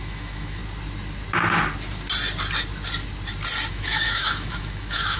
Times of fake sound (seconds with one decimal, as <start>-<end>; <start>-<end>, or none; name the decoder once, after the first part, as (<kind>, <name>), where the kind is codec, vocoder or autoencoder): 0.0-0.6 (autoencoder, DAC-VAE); 3.7-5.2